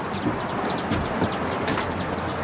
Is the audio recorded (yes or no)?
yes